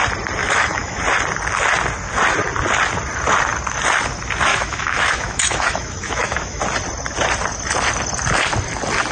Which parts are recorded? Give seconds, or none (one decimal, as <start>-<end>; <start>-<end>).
0.0-0.4; 1.0-4.5; 6.6-9.1